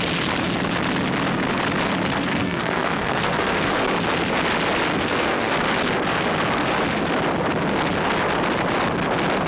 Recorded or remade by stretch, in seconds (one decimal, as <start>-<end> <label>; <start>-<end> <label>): 0.0-2.3 recorded; 2.3-3.7 remade; 3.7-4.9 recorded; 4.9-5.5 remade; 5.5-9.5 recorded